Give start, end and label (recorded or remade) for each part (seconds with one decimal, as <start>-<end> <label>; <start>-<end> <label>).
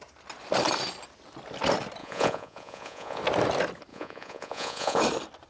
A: 0.0-2.0 recorded; 2.0-3.2 remade; 3.2-3.9 recorded; 3.9-5.0 remade; 5.0-5.5 recorded